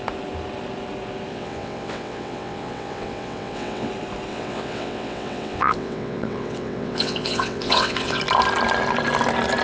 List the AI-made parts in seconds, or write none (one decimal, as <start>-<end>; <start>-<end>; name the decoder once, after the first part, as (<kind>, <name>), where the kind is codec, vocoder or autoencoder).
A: 1.3-3.9 (vocoder, WaveNeXt); 4.3-8.2